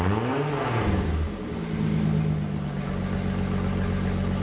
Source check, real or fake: real